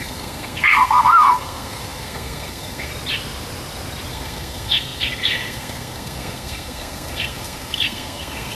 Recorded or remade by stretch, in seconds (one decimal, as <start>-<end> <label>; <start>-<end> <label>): 0.0-2.9 remade; 2.9-4.1 recorded; 4.1-8.5 remade